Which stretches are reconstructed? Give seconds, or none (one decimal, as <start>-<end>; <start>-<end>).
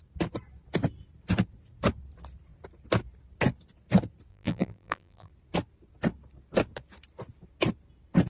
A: 4.3-5.3